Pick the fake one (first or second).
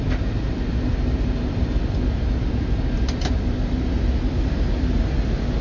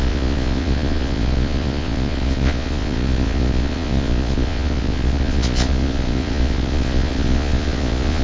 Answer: second